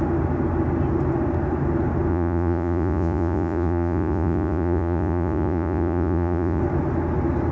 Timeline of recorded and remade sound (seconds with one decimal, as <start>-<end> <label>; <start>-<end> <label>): 0.0-2.1 recorded; 2.1-6.6 remade; 6.6-7.5 recorded